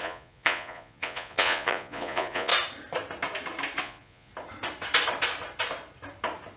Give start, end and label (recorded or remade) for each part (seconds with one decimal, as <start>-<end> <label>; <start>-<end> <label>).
0.0-2.5 remade; 2.5-3.8 recorded; 3.8-4.3 remade; 4.3-6.6 recorded